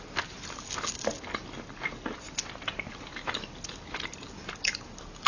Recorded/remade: recorded